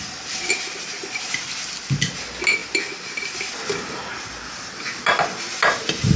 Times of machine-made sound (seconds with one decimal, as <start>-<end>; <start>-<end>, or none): none